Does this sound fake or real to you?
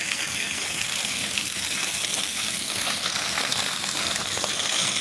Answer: fake